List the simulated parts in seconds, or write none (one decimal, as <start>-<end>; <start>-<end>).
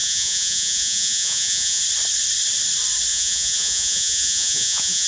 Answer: 0.0-1.8; 3.1-5.1